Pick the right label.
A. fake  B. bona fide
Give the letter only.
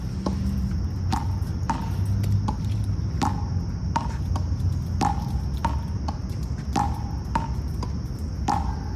B